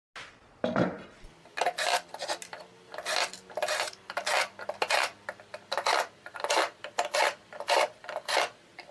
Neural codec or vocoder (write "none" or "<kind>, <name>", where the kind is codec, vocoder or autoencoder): none